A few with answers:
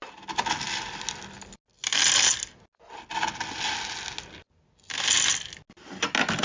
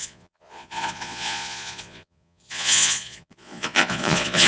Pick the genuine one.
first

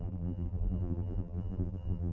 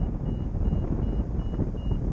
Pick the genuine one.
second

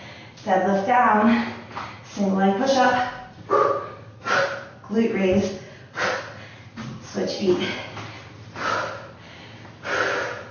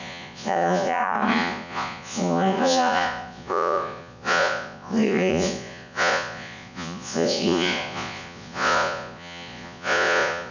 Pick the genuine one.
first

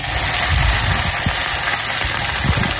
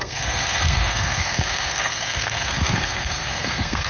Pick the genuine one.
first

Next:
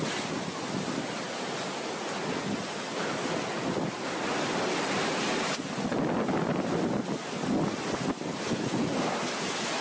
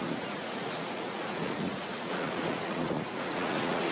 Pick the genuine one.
first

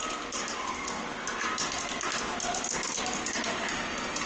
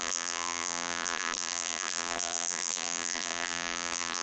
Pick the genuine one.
first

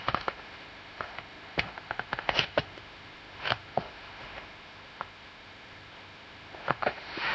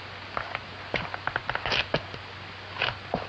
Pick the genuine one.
second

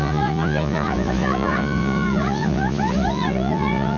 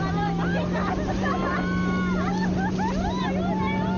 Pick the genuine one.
second